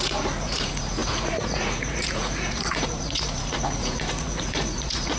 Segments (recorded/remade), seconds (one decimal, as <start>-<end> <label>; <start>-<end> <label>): 0.0-5.2 remade